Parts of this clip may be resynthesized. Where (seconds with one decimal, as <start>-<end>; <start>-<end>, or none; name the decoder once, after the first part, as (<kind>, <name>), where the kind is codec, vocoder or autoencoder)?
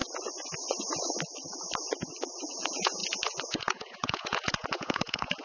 2.5-5.4 (vocoder, Vocos)